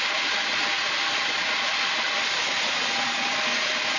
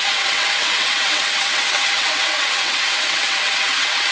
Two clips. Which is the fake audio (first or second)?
second